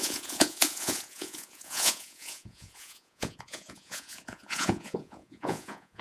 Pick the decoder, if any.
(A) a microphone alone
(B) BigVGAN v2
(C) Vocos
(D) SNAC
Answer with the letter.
C